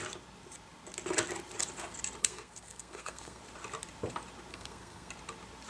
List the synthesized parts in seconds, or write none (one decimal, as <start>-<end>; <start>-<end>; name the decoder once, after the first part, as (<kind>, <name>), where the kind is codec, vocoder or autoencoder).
2.2-3.4 (codec, SNAC); 4.5-5.1